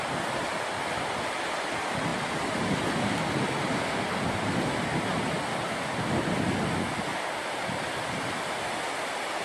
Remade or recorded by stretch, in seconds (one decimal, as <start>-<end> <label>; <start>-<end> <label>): 0.0-9.4 recorded